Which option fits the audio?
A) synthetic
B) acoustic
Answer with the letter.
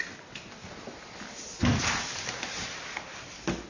B